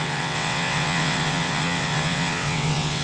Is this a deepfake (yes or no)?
yes